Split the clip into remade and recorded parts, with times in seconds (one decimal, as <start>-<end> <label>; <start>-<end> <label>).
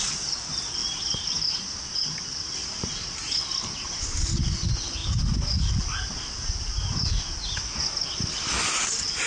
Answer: 0.0-0.8 recorded; 0.8-1.5 remade; 1.5-2.6 recorded; 2.6-3.4 remade; 3.4-9.3 recorded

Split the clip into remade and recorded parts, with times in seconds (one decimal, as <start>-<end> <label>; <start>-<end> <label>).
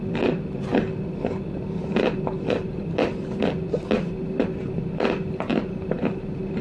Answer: 0.0-6.6 recorded